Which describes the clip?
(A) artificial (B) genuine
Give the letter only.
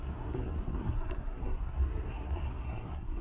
A